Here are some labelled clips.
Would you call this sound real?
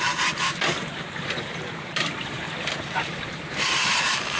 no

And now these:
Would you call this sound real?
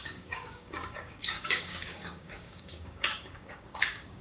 no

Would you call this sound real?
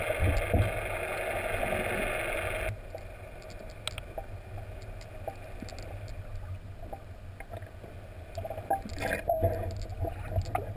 yes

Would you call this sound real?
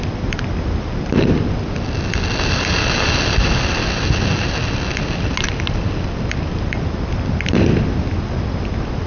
yes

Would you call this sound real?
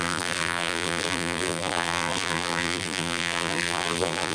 no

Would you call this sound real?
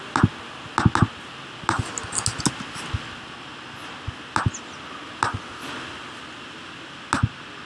yes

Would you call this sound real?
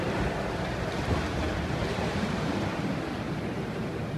no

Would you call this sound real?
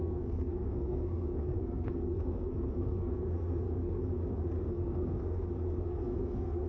no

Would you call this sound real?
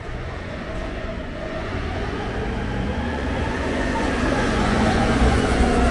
no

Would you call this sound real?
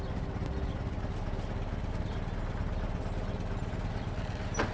yes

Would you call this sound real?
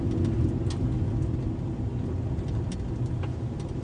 yes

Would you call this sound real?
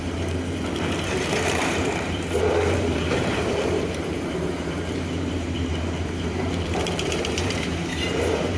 no